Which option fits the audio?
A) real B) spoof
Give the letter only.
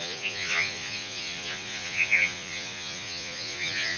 B